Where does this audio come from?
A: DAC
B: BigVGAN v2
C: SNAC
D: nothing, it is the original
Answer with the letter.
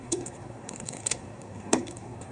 C